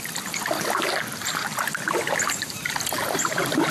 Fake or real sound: real